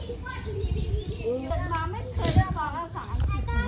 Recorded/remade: recorded